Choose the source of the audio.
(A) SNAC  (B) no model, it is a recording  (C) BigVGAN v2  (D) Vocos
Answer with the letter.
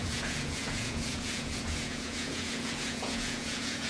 D